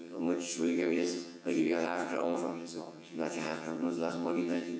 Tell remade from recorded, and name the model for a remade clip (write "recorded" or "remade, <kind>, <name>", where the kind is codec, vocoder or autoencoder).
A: remade, vocoder, HiFi-GAN